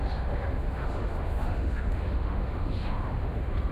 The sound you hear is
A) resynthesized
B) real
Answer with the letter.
A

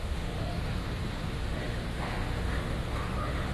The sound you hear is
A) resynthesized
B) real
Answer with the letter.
A